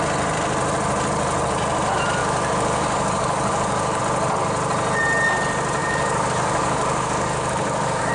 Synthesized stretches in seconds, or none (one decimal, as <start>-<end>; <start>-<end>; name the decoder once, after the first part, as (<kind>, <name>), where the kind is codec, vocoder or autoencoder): 2.2-4.0 (codec, DAC); 5.8-8.1

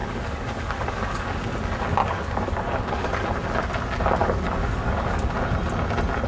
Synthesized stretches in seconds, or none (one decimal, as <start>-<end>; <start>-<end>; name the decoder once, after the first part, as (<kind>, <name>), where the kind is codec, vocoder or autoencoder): 0.0-1.4 (codec, DAC); 2.0-3.1; 4.2-5.3

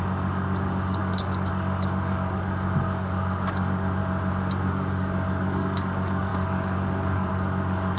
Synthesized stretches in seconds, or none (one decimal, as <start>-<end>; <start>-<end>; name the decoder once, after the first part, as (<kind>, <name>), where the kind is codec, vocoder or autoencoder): 0.0-4.0 (codec, DAC); 4.7-8.0

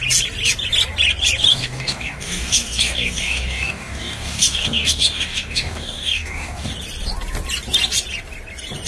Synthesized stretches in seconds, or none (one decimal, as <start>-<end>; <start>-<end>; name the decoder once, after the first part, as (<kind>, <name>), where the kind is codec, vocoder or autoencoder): 1.5-6.7 (codec, DAC)

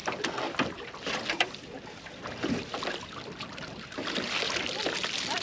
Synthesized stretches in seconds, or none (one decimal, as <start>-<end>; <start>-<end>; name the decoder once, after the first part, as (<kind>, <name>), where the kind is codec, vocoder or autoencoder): none

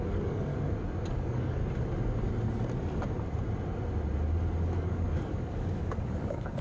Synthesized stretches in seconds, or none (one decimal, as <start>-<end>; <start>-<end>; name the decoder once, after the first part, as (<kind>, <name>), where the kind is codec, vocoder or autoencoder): 0.0-0.5 (codec, DAC); 1.1-1.6; 4.6-6.6